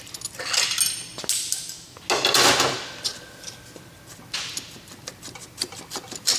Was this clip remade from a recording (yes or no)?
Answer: no